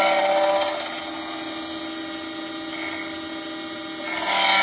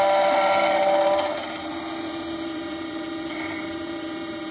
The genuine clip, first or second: first